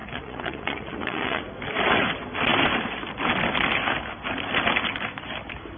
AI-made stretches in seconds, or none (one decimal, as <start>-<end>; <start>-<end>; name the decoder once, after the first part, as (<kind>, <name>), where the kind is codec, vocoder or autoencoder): 0.0-1.4 (vocoder, Vocos)